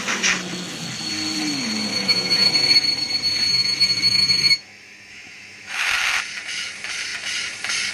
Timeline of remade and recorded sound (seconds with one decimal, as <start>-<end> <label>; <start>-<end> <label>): 0.0-1.9 recorded; 1.9-2.5 remade; 2.5-3.5 recorded; 3.5-5.9 remade; 5.9-7.9 recorded